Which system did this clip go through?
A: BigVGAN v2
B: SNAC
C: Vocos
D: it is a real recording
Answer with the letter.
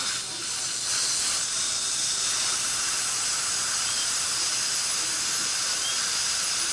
D